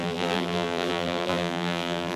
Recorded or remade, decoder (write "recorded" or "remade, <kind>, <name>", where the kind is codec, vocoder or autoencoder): remade, vocoder, BigVGAN v2